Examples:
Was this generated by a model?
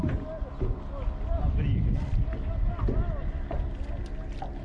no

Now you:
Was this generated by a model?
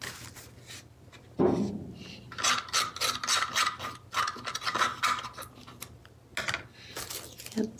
no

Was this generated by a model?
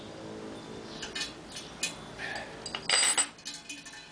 no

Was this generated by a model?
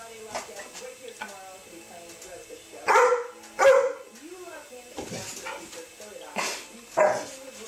no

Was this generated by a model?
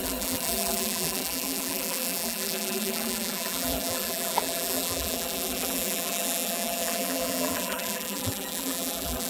yes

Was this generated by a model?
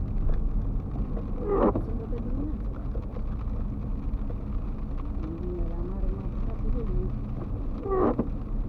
no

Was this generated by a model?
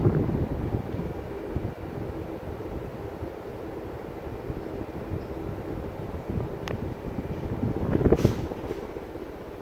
no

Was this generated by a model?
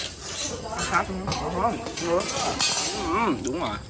no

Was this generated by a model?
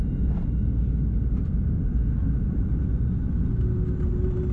no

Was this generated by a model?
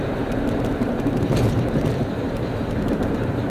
yes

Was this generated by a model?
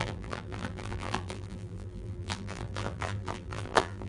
yes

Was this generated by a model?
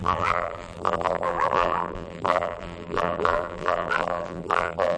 yes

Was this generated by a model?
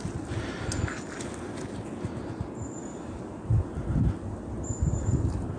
no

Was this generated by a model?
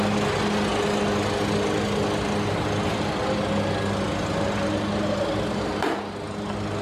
no